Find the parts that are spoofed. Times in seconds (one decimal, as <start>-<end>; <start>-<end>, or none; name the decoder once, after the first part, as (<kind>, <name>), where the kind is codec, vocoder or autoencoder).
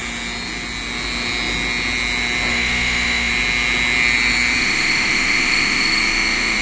2.5-3.3 (autoencoder, DAC-VAE); 4.6-6.6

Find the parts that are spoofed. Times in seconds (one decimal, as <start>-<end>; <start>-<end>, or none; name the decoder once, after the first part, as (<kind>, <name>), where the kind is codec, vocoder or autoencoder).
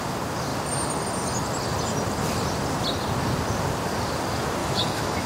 4.6-5.3 (autoencoder, DAC-VAE)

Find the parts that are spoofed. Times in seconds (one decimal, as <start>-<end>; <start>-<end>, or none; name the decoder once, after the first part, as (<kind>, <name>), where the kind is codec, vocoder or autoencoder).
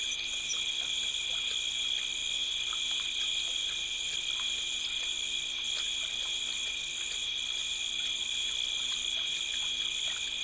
none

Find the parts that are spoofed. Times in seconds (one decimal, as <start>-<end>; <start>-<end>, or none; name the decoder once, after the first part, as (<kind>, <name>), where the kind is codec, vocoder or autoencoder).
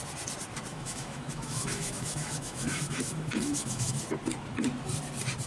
0.7-4.0 (autoencoder, DAC-VAE)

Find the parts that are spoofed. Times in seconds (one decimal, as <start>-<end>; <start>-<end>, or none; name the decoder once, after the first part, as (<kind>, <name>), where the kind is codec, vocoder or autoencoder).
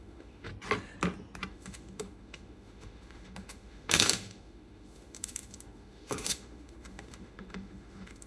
0.0-0.5 (autoencoder, DAC-VAE); 1.5-8.3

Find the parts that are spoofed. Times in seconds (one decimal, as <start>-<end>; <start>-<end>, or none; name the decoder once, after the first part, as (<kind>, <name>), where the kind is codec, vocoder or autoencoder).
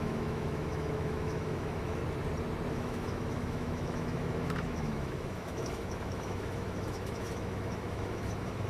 0.0-2.0 (autoencoder, DAC-VAE); 2.7-8.7